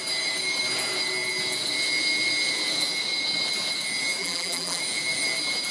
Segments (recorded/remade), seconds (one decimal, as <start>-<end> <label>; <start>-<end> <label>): 0.0-4.2 recorded; 4.2-4.8 remade; 4.8-5.7 recorded